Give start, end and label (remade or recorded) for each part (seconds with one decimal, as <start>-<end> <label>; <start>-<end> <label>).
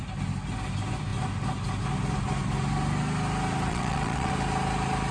0.0-3.7 recorded; 3.7-4.3 remade; 4.3-5.1 recorded